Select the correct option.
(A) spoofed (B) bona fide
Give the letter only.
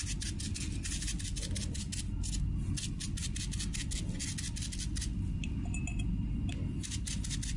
B